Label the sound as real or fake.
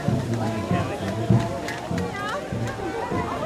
real